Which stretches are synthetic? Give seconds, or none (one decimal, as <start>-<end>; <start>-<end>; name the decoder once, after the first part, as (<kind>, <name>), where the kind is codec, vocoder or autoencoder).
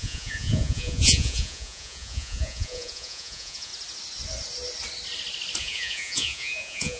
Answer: 0.0-3.7 (vocoder, Vocos); 5.6-7.0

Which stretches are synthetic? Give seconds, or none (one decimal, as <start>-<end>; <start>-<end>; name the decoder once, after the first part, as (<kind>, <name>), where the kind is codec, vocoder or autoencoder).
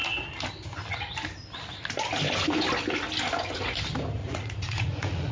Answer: 4.2-5.3 (vocoder, Vocos)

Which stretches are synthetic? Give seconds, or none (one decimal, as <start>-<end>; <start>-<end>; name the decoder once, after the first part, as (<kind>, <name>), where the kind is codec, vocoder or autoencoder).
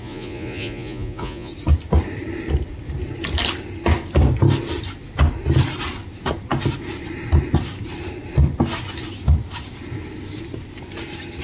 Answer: 0.0-1.5 (vocoder, Vocos)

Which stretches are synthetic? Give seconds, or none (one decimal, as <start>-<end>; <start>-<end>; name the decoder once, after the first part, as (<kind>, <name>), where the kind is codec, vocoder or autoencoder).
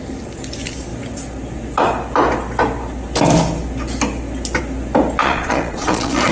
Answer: 5.2-6.3 (vocoder, Vocos)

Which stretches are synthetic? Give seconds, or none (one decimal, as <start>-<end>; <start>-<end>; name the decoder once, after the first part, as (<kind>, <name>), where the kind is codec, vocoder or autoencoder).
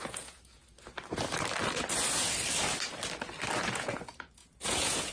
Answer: 0.0-0.6 (vocoder, Vocos); 3.7-5.1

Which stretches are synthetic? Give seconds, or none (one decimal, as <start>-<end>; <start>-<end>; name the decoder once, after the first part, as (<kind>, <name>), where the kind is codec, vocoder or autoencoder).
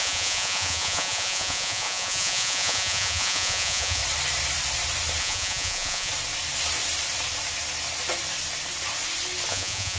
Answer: 0.0-4.0 (vocoder, Vocos); 5.2-6.1; 9.5-10.0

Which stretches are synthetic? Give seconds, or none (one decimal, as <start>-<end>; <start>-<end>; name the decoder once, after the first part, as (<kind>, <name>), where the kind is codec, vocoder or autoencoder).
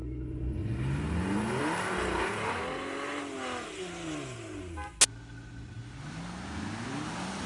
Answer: none